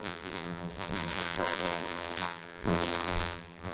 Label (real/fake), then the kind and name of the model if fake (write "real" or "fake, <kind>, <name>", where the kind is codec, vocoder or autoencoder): fake, vocoder, BigVGAN v2